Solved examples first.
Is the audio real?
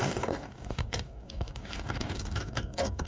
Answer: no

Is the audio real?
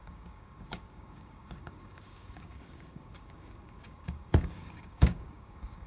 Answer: no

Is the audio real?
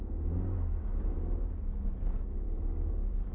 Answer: yes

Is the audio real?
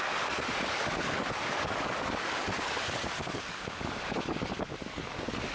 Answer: no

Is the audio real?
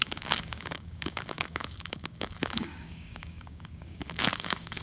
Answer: no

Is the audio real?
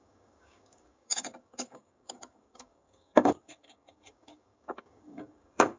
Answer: no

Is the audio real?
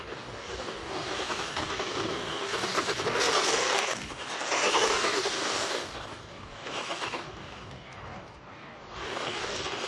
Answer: no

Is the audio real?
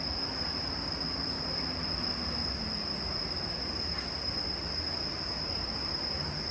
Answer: yes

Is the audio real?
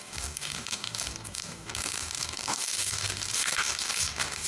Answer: no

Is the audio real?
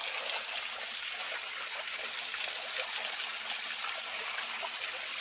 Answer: yes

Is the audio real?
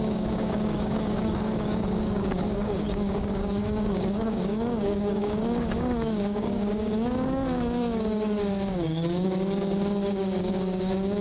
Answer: no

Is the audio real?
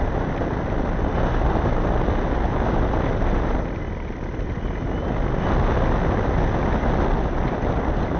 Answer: yes